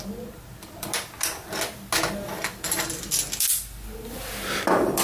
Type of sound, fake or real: real